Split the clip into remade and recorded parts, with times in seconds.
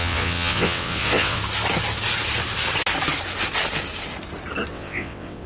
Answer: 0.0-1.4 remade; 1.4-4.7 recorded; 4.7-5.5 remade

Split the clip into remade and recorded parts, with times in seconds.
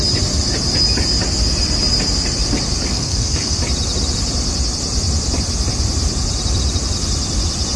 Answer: 0.0-2.9 recorded; 2.9-3.6 remade; 3.6-7.8 recorded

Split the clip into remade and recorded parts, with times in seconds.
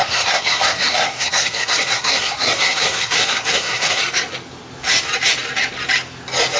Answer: 0.0-4.0 remade; 4.0-6.6 recorded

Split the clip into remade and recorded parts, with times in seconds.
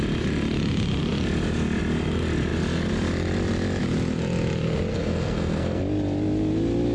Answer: 0.0-4.9 recorded; 4.9-5.8 remade; 5.8-6.9 recorded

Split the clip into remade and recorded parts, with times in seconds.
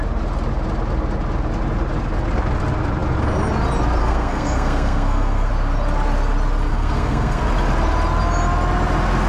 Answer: 0.0-4.0 recorded; 4.0-5.5 remade; 5.5-6.7 recorded; 6.7-7.4 remade; 7.4-9.3 recorded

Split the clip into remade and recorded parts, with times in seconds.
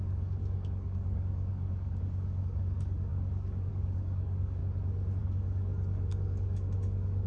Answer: 0.0-4.6 remade; 4.6-5.2 recorded; 5.2-7.3 remade